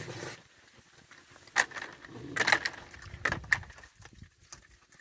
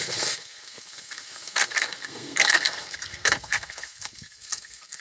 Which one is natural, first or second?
first